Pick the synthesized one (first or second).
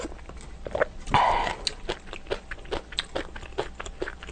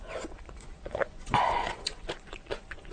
second